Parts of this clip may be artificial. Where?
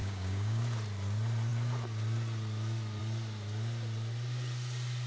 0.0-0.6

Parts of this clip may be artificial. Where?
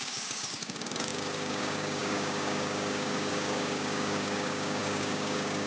0.0-5.7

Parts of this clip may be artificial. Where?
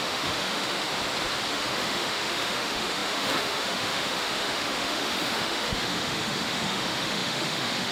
0.0-0.9; 1.5-7.9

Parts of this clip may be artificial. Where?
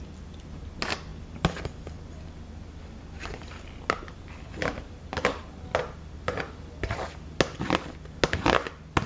none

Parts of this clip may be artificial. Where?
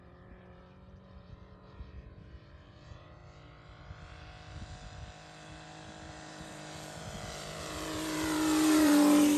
0.0-3.2; 6.1-9.4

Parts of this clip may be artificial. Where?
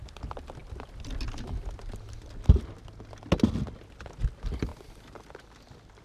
none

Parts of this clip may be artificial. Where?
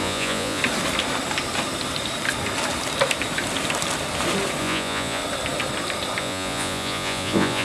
0.0-0.6; 4.6-5.2; 6.2-7.6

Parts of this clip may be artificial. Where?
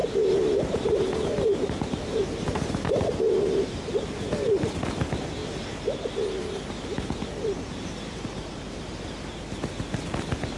0.0-3.6